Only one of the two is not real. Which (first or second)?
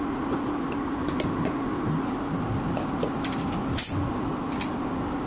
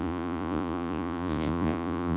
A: second